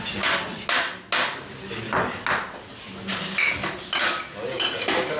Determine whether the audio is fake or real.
real